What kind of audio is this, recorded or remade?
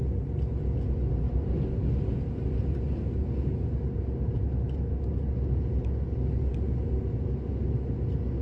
recorded